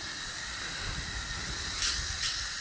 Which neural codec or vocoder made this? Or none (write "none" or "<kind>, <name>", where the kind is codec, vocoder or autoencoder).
none